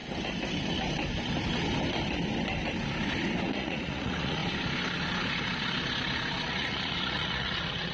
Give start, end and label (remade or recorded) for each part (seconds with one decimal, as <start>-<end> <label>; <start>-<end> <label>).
0.0-3.5 recorded; 3.5-4.4 remade; 4.4-6.4 recorded; 6.4-7.9 remade